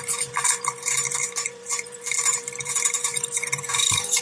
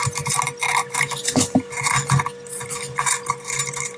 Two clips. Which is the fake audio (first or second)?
first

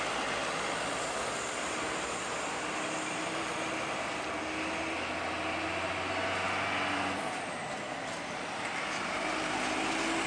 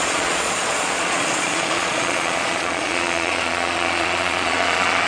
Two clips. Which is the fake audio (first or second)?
second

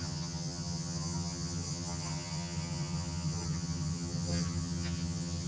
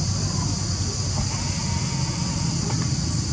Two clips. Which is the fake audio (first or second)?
first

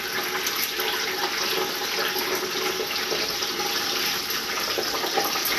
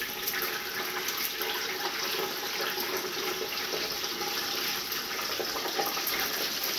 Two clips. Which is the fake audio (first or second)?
second